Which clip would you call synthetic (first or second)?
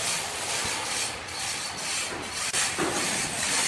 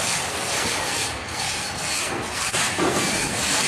second